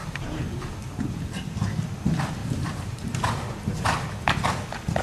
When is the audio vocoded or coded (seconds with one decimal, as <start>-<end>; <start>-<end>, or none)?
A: 0.0-0.7; 2.4-4.4